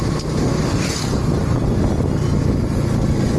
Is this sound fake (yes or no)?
no